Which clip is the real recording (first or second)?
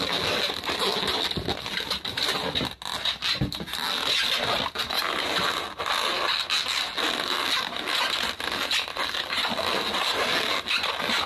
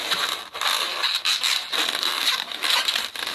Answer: first